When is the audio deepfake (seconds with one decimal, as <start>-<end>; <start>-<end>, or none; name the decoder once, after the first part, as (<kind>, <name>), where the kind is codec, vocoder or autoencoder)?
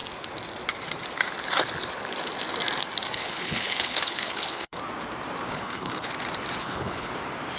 3.2-4.8 (codec, HILCodec); 5.5-6.1; 6.6-7.1